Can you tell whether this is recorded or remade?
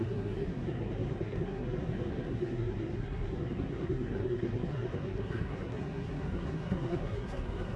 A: remade